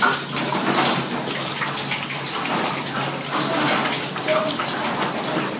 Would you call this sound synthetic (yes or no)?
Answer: no